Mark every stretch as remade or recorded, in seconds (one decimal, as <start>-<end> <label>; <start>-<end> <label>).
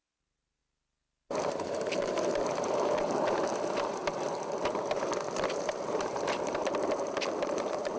0.0-0.6 remade; 0.6-1.4 recorded; 1.4-4.0 remade; 4.0-5.9 recorded; 5.9-8.0 remade